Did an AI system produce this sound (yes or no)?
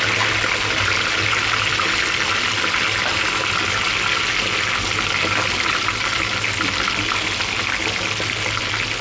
no